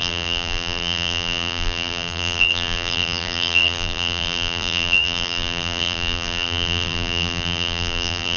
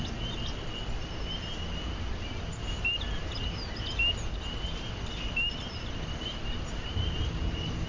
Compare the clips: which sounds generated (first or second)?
first